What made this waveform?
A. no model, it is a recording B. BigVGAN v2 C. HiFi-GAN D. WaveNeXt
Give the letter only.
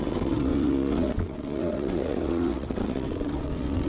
D